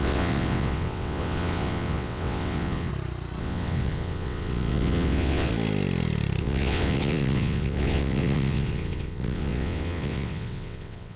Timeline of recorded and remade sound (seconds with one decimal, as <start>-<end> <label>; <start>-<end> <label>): 0.0-2.9 remade; 2.9-3.4 recorded; 3.4-5.5 remade; 5.5-6.4 recorded; 6.4-11.2 remade